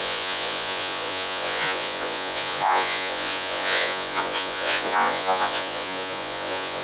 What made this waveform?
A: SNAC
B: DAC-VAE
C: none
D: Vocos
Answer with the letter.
D